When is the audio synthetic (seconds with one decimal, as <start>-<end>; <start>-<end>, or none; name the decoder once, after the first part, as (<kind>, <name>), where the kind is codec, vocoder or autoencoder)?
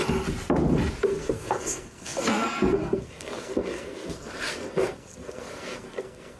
1.0-6.4 (codec, SNAC)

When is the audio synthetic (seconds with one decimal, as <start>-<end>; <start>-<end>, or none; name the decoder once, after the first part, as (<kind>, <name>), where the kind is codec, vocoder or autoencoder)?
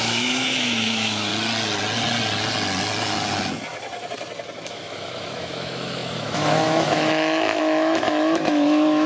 0.0-1.3 (autoencoder, DAC-VAE); 4.7-9.1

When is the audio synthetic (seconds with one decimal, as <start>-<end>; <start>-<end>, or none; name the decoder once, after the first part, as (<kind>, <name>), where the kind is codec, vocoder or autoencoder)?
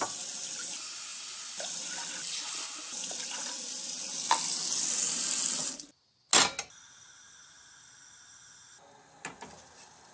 none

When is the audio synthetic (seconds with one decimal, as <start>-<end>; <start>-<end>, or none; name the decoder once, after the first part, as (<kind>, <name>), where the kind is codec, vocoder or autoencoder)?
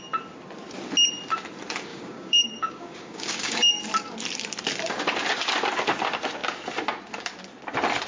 1.9-3.8 (codec, DAC)